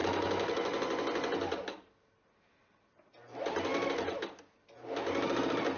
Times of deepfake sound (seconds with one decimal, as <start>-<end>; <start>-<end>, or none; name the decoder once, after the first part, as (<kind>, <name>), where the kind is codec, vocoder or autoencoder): none